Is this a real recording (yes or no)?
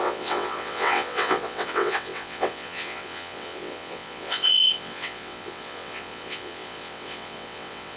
no